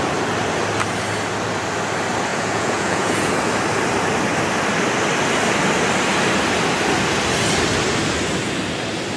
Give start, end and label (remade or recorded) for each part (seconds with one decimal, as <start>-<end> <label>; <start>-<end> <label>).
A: 0.0-2.3 recorded; 2.3-3.3 remade; 3.3-9.2 recorded